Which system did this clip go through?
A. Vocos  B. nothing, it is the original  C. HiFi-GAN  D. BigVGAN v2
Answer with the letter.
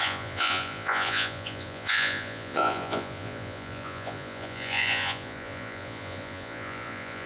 A